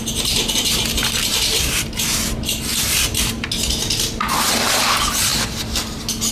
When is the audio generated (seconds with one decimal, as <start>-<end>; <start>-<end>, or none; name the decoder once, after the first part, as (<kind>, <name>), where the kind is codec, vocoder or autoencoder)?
none